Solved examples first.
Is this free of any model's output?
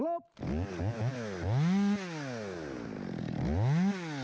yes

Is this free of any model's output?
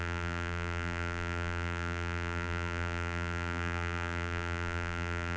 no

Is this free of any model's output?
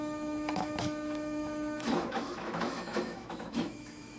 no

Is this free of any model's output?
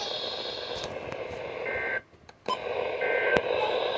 no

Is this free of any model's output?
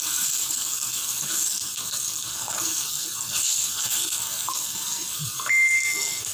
no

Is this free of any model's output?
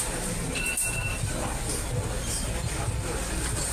yes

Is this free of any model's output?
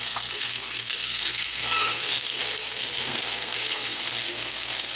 no